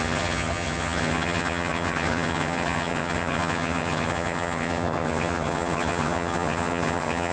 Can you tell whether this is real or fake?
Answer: fake